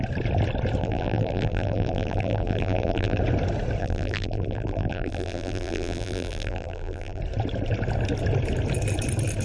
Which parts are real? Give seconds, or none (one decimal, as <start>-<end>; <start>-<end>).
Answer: 0.0-0.8; 3.2-3.8; 7.2-9.4